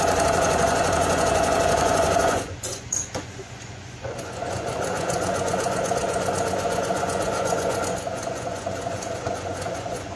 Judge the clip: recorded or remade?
remade